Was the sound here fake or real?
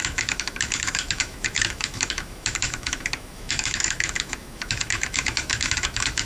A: fake